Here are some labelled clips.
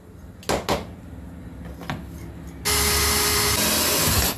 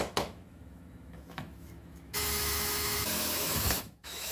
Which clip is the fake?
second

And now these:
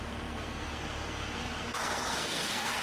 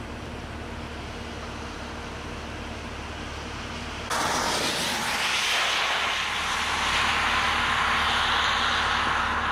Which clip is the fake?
first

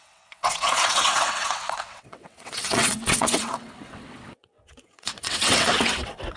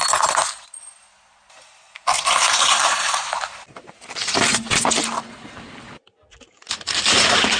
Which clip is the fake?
first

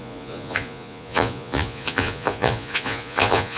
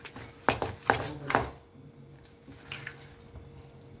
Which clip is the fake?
first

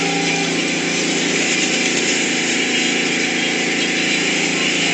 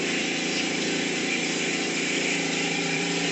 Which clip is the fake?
second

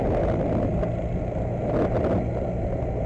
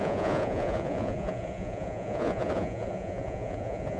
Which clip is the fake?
second